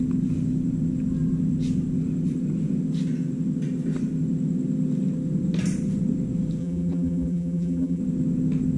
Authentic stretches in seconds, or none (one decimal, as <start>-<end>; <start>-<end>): 0.0-6.6; 8.0-8.8